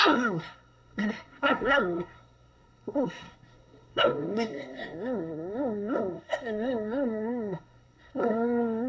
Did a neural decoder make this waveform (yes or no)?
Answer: yes